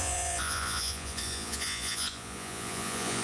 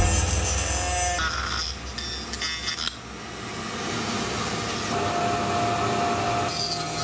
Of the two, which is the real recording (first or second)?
second